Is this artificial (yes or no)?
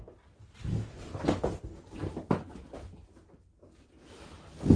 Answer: no